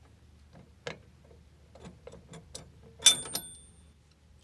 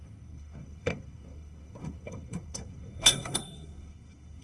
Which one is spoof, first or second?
second